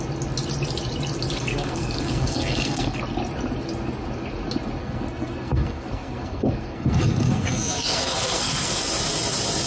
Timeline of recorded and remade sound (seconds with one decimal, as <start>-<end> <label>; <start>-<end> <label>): 0.0-1.5 recorded; 1.5-3.0 remade; 3.0-4.8 recorded; 4.8-8.8 remade; 8.8-9.7 recorded